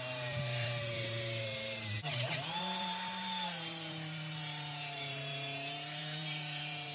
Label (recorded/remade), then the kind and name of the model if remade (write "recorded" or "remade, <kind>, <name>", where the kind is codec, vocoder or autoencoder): remade, vocoder, BigVGAN v2